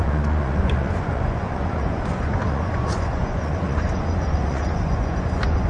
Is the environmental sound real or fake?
fake